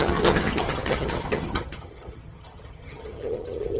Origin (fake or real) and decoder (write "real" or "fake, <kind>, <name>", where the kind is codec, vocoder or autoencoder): fake, vocoder, HiFi-GAN